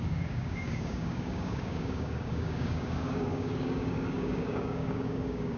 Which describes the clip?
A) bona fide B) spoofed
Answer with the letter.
B